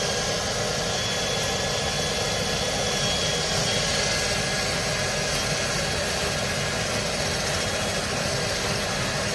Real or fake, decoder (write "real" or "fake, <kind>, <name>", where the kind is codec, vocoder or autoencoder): real